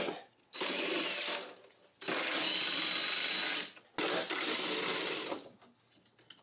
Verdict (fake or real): real